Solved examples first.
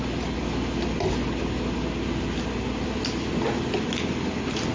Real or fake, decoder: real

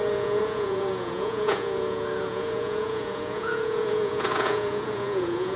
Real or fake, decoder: fake, vocoder, Vocos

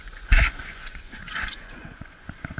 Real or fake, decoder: fake, vocoder, Vocos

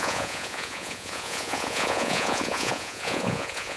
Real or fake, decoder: fake, vocoder, Vocos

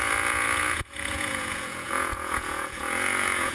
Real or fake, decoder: fake, vocoder, Vocos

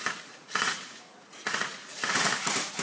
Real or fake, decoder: fake, vocoder, Vocos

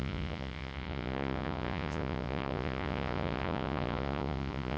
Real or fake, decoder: fake, vocoder, Vocos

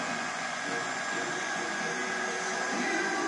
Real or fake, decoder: fake, vocoder, Vocos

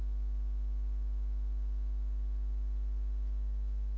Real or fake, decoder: real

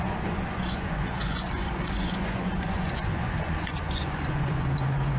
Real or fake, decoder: fake, vocoder, Vocos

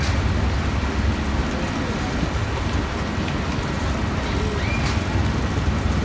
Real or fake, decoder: real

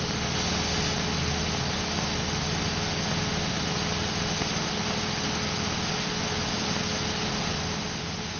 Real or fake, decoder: real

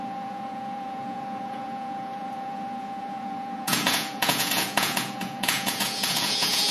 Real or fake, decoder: fake, vocoder, Vocos